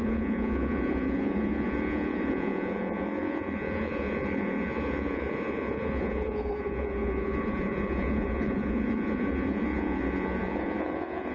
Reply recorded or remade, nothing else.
remade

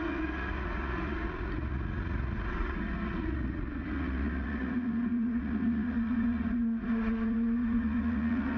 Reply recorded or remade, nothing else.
remade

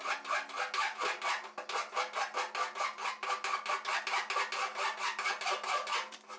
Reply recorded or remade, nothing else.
recorded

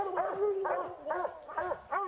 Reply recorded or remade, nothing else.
recorded